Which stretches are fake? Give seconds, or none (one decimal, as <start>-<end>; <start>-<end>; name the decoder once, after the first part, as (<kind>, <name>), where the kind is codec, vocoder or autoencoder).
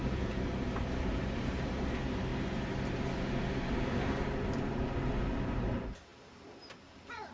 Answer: 0.0-1.7 (vocoder, BigVGAN v2)